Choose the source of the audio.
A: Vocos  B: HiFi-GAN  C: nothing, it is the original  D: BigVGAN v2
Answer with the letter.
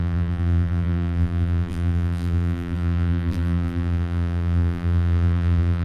D